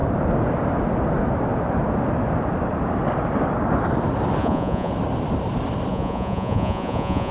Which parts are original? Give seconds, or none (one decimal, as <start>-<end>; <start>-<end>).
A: 0.0-4.4; 4.9-5.9